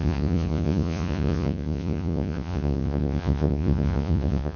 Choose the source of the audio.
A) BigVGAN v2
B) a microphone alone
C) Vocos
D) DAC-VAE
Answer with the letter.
C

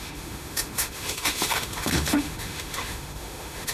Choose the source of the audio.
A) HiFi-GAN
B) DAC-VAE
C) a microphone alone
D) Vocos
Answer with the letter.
B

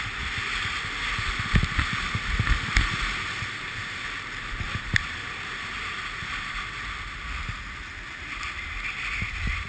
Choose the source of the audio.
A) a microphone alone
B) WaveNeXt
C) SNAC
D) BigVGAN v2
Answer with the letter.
A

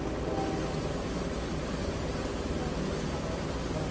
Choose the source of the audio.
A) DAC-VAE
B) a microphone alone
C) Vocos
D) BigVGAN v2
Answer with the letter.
B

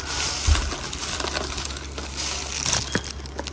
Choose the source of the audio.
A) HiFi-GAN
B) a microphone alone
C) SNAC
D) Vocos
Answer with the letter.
B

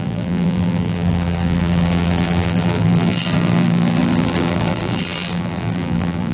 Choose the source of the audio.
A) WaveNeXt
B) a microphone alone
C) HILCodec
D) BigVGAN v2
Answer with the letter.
D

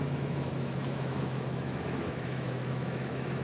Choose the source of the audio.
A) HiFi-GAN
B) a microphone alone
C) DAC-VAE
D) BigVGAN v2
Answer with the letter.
C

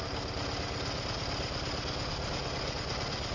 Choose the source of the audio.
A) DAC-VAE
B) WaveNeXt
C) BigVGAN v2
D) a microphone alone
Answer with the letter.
D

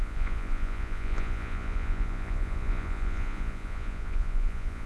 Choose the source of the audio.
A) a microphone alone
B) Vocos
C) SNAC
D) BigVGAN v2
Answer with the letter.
B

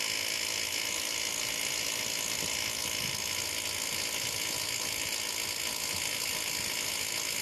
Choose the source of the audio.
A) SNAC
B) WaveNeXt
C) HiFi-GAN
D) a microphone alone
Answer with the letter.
D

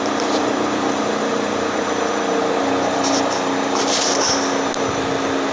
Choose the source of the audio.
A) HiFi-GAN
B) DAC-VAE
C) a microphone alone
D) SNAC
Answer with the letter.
C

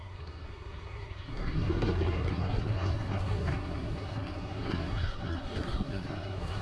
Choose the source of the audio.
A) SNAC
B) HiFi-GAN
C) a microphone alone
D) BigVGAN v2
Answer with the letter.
A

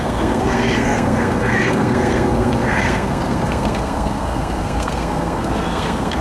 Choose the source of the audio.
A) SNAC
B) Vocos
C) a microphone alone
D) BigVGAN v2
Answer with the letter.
A